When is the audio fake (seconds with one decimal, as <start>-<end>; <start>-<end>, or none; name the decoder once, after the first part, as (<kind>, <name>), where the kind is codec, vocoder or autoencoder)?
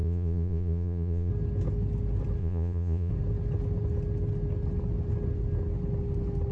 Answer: 0.0-1.3 (vocoder, Vocos); 2.4-3.1